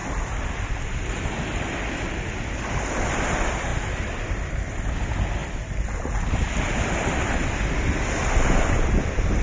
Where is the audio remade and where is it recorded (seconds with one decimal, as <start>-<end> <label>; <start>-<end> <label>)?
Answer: 0.0-9.4 recorded